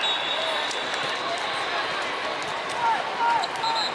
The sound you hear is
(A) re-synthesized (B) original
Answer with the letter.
B